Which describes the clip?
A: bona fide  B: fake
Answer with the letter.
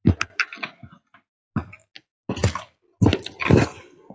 A